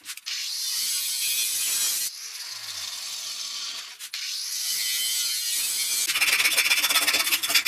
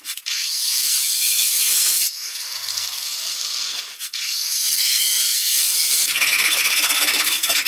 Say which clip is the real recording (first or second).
first